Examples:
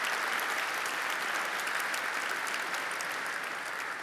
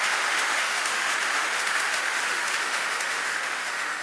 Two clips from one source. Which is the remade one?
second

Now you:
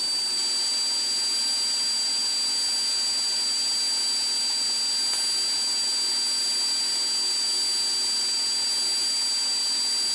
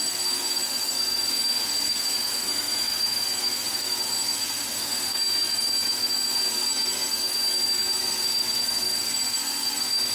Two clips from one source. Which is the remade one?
second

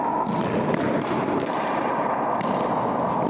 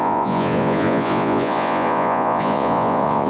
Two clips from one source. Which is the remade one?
second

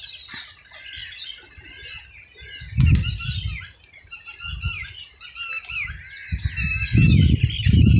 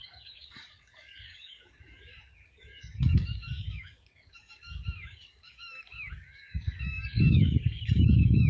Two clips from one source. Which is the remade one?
second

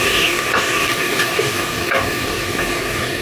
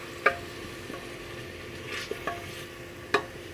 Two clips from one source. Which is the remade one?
first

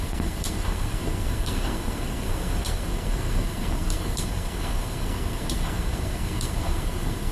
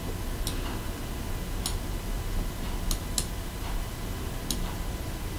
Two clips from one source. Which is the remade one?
first